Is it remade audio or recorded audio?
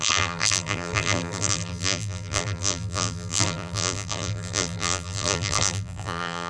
remade